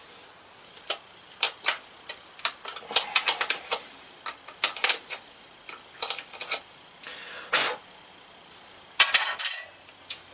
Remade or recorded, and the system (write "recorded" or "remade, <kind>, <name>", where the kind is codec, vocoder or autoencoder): recorded